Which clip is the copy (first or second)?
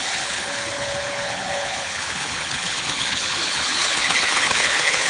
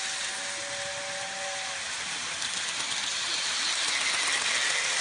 first